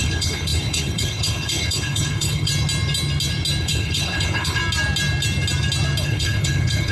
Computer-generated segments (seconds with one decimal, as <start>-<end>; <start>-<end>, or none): 0.0-2.5; 3.6-4.6; 6.0-6.9